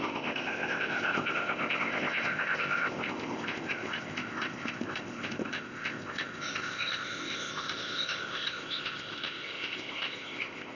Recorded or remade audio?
remade